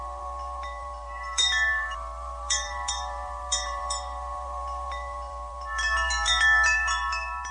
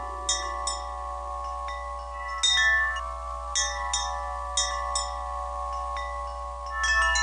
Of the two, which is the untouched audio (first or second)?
second